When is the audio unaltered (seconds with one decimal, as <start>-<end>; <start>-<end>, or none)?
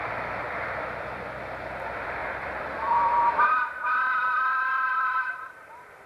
none